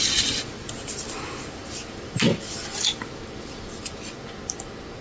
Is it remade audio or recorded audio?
recorded